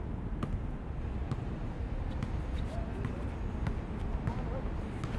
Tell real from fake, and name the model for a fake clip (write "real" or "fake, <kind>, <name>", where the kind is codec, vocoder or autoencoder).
real